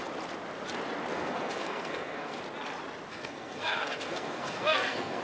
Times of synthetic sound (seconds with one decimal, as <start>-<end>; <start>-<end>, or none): 1.1-2.4; 3.1-5.2